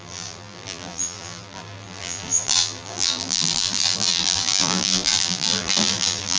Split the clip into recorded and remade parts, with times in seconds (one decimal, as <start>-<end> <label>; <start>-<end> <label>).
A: 0.0-6.4 remade